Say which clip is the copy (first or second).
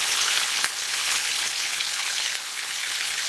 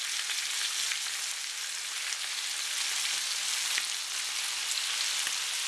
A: first